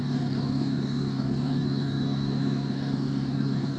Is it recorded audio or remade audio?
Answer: remade